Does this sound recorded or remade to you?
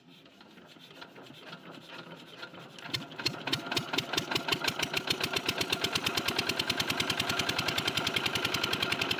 recorded